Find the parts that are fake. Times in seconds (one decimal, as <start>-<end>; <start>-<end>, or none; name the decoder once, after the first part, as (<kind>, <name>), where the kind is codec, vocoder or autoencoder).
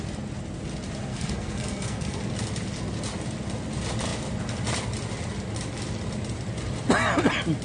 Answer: 1.1-2.2 (codec, SNAC)